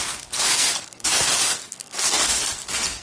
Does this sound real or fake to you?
fake